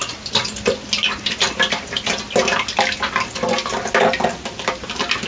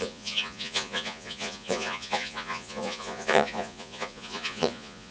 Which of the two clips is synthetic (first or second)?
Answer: second